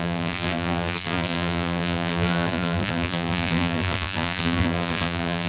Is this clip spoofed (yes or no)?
yes